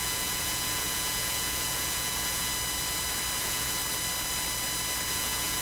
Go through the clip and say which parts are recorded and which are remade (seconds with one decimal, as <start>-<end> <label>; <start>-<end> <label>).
0.0-2.5 remade; 2.5-3.4 recorded; 3.4-3.8 remade; 3.8-5.1 recorded; 5.1-5.6 remade